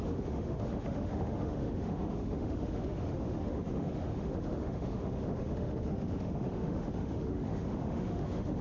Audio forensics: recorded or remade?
remade